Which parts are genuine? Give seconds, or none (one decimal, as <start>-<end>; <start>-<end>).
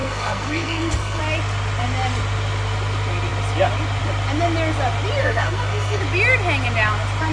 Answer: 1.2-5.2; 6.0-7.3